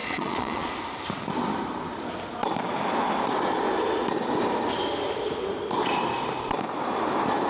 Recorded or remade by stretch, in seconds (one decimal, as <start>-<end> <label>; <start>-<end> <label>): 0.0-0.7 remade; 0.7-7.5 recorded